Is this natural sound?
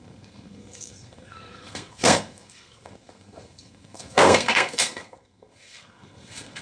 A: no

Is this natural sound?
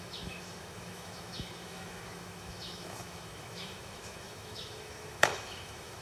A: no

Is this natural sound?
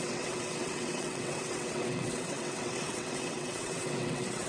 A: no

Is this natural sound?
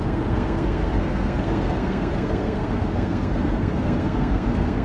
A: no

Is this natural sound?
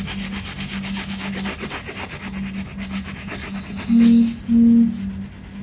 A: yes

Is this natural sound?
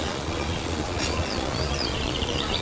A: no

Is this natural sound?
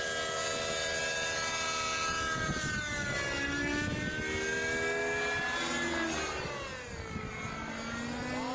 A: yes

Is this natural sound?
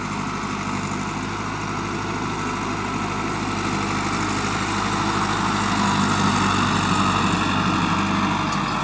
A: yes